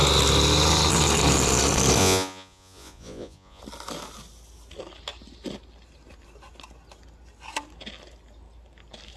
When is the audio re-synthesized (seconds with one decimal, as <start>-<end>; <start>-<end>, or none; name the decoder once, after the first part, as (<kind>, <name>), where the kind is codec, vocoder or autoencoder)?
2.0-3.6 (vocoder, Vocos)